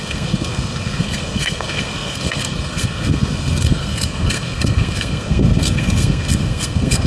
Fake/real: fake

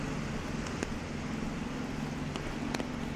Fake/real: real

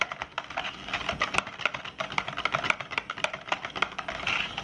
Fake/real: real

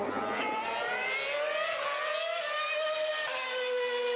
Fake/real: real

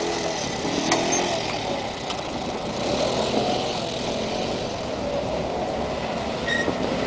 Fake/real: real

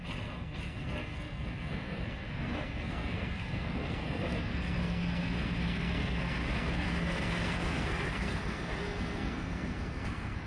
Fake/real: fake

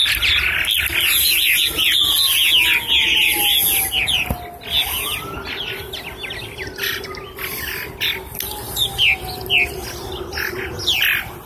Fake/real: real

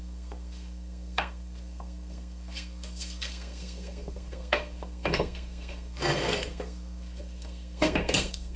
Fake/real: fake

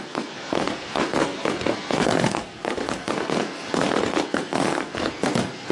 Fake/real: fake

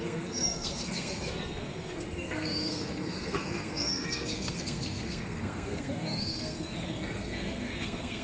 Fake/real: fake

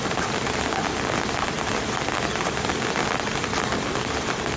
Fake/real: real